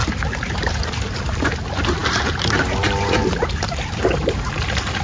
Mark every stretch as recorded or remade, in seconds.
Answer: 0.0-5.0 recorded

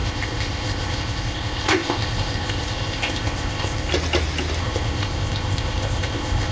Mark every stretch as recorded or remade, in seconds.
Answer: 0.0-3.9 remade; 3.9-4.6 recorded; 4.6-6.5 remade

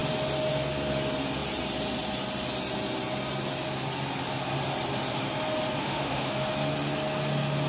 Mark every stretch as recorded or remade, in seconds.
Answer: 0.0-5.8 recorded; 5.8-6.3 remade; 6.3-7.7 recorded

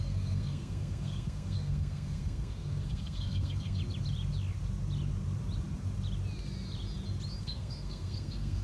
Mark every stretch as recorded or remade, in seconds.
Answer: 0.0-3.8 remade; 3.8-7.4 recorded; 7.4-8.6 remade